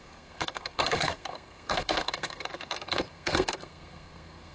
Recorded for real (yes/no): no